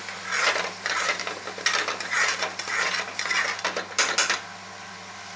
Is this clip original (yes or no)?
yes